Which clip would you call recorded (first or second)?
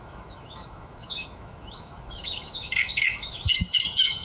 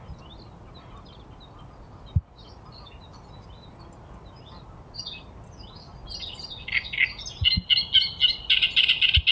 second